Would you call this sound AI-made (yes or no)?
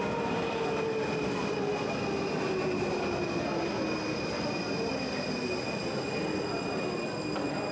no